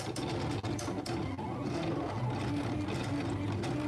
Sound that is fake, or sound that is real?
real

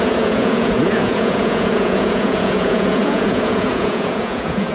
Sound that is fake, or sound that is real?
fake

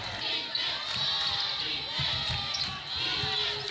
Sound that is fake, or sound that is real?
fake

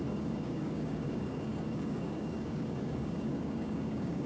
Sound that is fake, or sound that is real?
fake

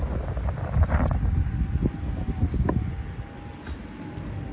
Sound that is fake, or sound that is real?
real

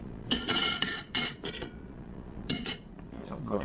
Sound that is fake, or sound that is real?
fake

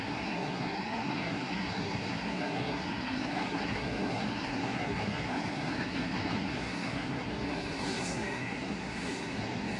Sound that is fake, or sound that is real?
fake